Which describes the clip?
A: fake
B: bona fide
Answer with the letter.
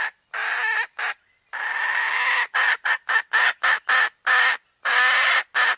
B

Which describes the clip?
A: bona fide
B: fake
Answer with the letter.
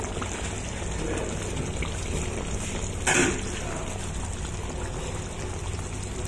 A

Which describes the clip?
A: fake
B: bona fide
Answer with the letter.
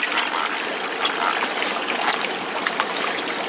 B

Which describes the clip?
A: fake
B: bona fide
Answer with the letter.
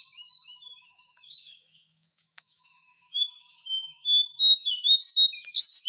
A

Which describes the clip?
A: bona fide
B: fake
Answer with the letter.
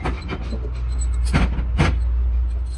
A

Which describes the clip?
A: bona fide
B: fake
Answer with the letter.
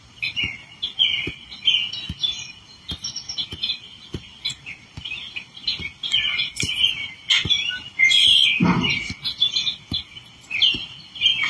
A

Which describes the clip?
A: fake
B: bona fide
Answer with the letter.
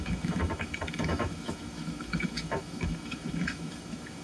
A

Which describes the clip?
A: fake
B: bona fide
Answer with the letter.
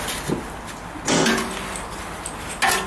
B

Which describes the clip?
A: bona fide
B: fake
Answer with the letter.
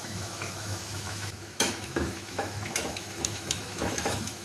B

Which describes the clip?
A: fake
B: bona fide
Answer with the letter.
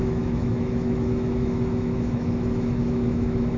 A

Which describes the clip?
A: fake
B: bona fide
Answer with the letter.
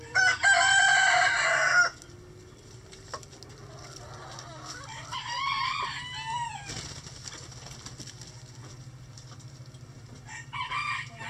B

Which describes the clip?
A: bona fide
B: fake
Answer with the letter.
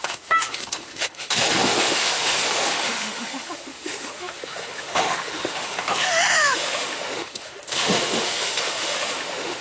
B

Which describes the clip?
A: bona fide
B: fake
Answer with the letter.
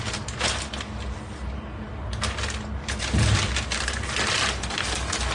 A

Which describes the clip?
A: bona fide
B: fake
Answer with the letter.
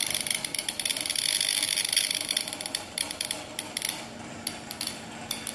A